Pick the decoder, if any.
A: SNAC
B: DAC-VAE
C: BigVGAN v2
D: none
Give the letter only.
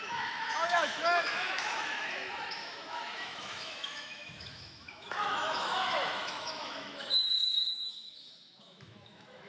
B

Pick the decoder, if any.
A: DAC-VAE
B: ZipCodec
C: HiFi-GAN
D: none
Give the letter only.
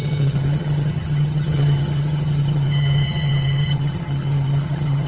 C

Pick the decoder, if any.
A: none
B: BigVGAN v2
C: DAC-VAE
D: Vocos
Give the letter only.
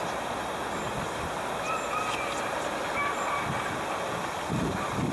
A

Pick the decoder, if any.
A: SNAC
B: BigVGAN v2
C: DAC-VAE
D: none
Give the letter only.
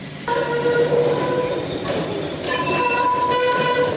B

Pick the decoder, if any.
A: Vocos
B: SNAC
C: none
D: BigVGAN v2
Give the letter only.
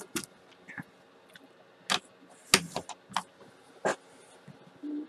C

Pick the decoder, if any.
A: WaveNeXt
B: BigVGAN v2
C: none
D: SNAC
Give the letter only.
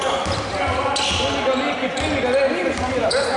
C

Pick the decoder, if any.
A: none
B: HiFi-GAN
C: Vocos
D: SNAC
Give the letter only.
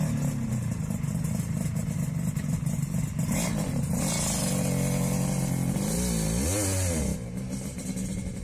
A